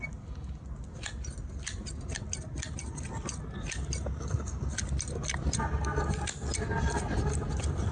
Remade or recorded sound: recorded